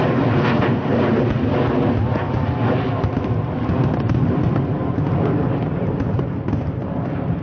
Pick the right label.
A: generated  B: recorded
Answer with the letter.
B